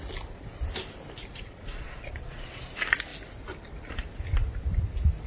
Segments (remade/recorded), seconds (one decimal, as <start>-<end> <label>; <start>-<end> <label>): 0.0-1.3 recorded; 1.3-2.7 remade; 2.7-5.3 recorded